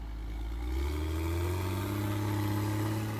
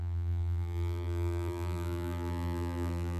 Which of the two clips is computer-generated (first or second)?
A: second